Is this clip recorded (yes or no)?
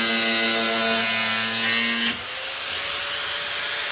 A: yes